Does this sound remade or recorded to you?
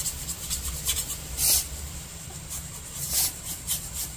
recorded